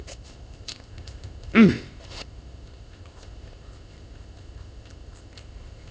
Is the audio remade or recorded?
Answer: remade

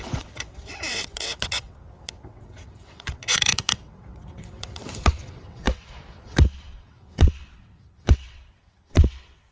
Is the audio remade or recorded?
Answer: remade